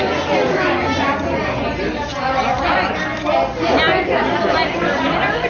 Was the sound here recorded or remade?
recorded